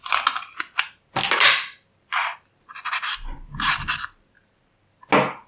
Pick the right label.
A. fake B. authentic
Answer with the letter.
B